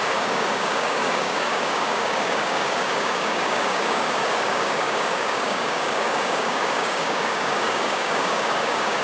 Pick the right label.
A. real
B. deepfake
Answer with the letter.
B